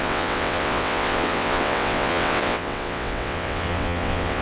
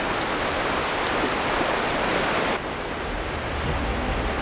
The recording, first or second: second